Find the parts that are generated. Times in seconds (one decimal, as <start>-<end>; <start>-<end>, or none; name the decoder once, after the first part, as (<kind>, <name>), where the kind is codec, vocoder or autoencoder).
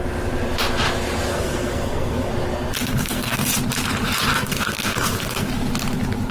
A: 1.3-2.3 (codec, SNAC); 2.8-3.5; 4.3-5.5